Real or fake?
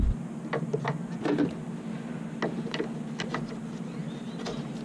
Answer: real